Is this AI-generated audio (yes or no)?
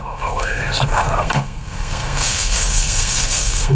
yes